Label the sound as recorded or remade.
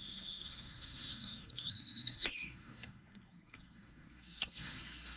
remade